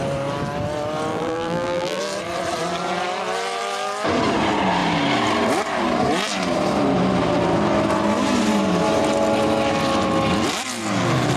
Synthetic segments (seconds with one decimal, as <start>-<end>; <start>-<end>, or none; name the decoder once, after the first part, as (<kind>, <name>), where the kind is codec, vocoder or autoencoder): 1.1-2.0 (vocoder, BigVGAN v2)